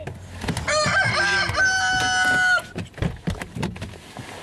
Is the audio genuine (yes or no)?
yes